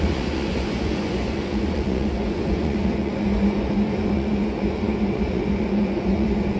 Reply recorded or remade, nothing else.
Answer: remade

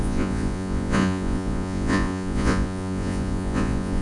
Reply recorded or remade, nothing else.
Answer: remade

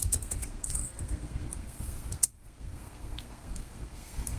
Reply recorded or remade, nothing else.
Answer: remade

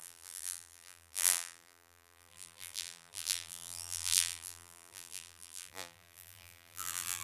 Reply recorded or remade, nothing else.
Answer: remade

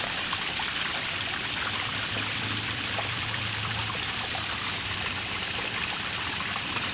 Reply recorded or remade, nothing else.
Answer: remade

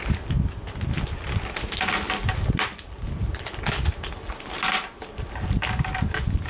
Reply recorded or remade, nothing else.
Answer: recorded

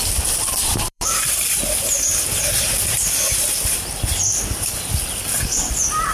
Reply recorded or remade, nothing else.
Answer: remade